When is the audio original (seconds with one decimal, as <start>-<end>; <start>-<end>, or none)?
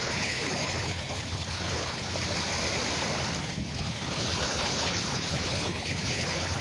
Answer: 2.1-3.4